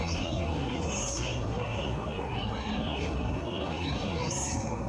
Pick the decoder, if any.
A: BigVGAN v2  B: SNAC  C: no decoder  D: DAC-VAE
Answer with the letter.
B